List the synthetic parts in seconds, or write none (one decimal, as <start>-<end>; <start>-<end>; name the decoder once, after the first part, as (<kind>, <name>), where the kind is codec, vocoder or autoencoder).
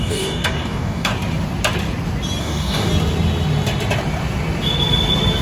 0.0-1.1 (codec, DAC); 2.4-2.9